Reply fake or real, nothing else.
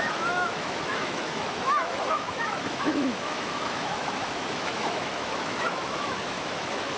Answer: fake